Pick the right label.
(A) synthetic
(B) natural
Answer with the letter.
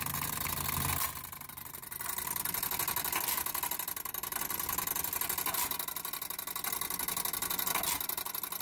B